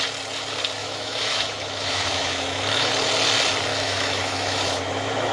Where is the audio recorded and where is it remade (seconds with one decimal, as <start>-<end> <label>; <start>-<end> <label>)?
0.0-0.8 recorded; 0.8-2.9 remade; 2.9-3.7 recorded; 3.7-5.3 remade